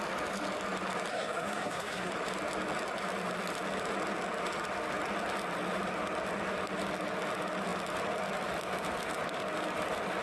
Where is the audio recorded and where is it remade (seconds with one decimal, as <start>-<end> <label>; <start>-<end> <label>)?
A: 0.0-1.1 recorded; 1.1-2.1 remade; 2.1-10.2 recorded

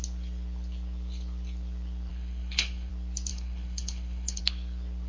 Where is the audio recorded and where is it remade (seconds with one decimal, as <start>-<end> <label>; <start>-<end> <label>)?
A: 0.0-2.1 recorded; 2.1-2.9 remade; 2.9-3.3 recorded; 3.3-4.4 remade; 4.4-5.1 recorded

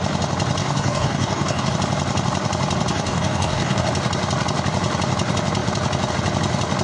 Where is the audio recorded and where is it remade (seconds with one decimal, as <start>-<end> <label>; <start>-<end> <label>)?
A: 0.0-0.6 recorded; 0.6-1.7 remade; 1.7-2.9 recorded; 2.9-3.9 remade; 3.9-6.8 recorded

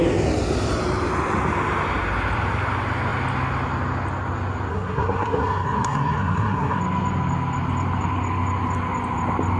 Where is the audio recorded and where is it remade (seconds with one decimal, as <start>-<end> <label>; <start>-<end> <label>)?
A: 0.0-4.7 recorded; 4.7-6.8 remade; 6.8-9.6 recorded

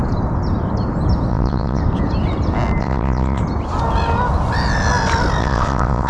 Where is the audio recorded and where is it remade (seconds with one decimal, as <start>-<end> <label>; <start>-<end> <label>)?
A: 0.0-1.3 recorded; 1.3-1.8 remade; 1.8-2.8 recorded; 2.8-3.4 remade; 3.4-5.4 recorded; 5.4-6.1 remade

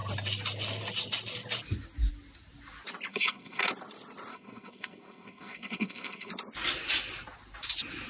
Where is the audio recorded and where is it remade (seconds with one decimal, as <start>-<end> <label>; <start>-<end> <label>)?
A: 0.0-3.1 recorded; 3.1-3.7 remade; 3.7-4.3 recorded; 4.3-6.3 remade; 6.3-8.1 recorded